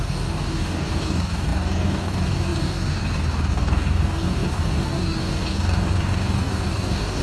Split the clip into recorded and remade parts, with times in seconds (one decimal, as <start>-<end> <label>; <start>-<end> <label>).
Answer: 0.0-7.2 remade